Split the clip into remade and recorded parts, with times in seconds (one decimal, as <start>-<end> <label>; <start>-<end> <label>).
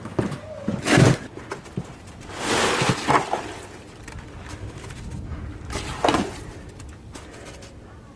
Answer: 0.0-8.2 recorded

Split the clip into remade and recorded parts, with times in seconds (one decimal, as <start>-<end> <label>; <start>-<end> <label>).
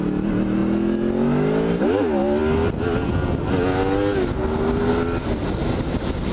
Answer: 0.0-6.3 recorded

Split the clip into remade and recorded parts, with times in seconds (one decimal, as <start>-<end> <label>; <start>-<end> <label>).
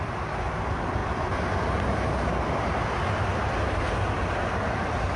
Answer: 0.0-5.2 recorded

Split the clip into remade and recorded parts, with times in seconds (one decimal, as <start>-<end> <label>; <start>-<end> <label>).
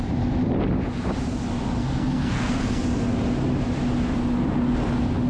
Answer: 0.0-1.8 recorded; 1.8-2.8 remade; 2.8-5.3 recorded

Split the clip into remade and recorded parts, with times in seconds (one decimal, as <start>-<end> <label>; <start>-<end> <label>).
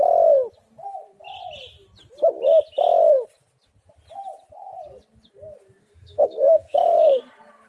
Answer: 0.0-5.8 recorded; 5.8-7.2 remade; 7.2-7.7 recorded